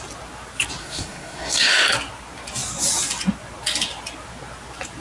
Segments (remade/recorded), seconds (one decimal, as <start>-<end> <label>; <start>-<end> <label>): 0.0-0.8 recorded; 0.8-1.7 remade; 1.7-5.0 recorded